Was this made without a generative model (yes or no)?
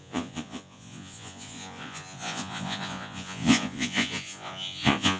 no